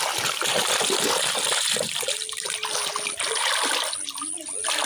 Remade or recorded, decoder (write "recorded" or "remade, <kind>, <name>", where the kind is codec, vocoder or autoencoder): recorded